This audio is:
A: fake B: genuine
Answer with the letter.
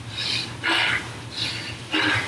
B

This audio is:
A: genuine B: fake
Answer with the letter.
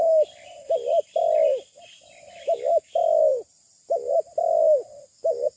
A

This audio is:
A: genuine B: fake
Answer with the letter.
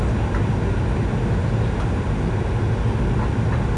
A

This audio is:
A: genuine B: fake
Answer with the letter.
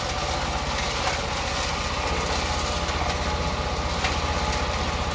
A